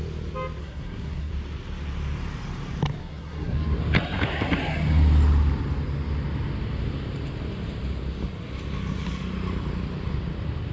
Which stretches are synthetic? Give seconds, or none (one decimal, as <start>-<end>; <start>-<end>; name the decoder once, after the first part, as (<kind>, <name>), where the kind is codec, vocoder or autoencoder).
0.6-1.3 (codec, SNAC); 3.0-3.8